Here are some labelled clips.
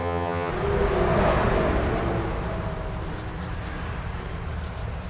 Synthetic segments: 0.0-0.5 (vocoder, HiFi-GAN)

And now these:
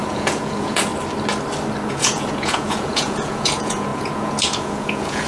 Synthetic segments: 0.0-0.9 (vocoder, Vocos); 1.9-5.3

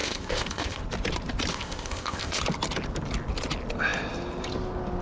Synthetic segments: 0.0-0.8 (codec, ZipCodec); 1.5-2.4

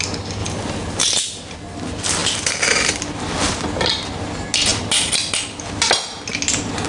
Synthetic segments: 0.4-1.0 (vocoder, BigVGAN v2); 2.2-3.6; 4.7-5.8

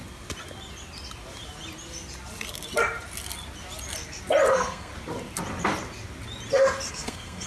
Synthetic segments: 4.5-4.9 (codec, SNAC); 6.9-7.5

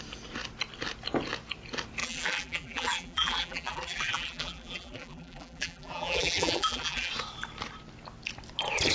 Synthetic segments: 2.0-7.1 (vocoder, BigVGAN v2)